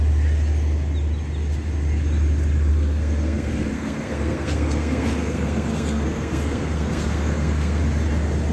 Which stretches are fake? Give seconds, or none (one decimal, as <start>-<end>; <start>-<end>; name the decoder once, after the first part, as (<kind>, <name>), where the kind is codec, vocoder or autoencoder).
2.7-7.8 (codec, SNAC)